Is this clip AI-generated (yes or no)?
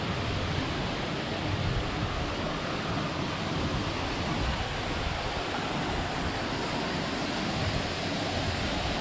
no